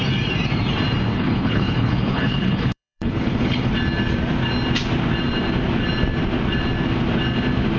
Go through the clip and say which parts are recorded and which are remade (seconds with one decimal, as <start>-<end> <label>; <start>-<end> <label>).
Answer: 0.0-1.1 recorded; 1.1-3.7 remade; 3.7-7.8 recorded